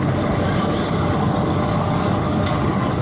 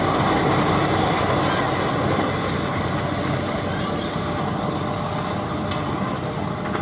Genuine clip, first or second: second